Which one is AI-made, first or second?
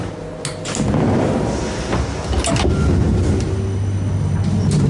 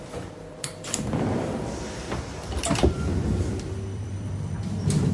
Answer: second